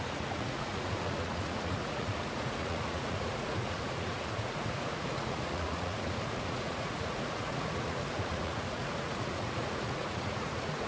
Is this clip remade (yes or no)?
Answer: yes